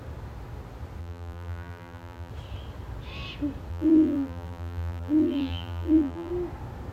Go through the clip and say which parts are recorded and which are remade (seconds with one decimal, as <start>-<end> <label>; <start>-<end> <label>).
0.0-1.0 recorded; 1.0-2.3 remade; 2.3-3.7 recorded; 3.7-6.3 remade; 6.3-6.9 recorded